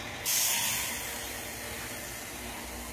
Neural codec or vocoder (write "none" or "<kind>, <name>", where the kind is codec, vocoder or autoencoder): none